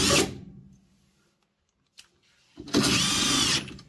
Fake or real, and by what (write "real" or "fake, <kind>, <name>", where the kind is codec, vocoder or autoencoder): real